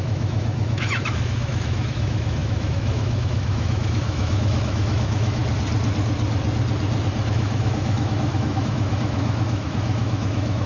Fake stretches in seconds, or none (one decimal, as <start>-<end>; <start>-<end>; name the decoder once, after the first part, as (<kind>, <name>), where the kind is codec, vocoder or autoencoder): 0.0-5.4 (autoencoder, DAC-VAE); 7.3-10.7